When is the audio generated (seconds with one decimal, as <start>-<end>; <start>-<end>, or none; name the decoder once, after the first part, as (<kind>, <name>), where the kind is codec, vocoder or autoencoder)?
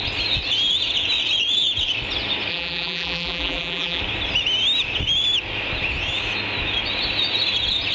2.5-4.0 (vocoder, BigVGAN v2)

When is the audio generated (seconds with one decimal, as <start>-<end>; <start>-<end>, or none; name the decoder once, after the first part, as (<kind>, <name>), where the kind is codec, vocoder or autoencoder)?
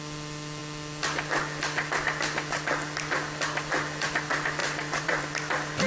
4.6-5.3 (vocoder, BigVGAN v2)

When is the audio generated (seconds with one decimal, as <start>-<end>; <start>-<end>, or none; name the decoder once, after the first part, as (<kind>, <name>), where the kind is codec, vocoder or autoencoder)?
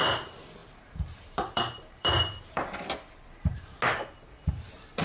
0.6-3.6 (vocoder, BigVGAN v2)